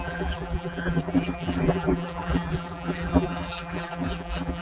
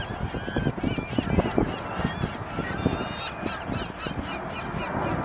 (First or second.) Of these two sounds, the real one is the second